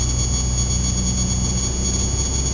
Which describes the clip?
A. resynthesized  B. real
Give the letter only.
B